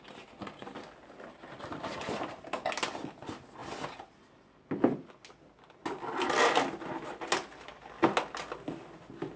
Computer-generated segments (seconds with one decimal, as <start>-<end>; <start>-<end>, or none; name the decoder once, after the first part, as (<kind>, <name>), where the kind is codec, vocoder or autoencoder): none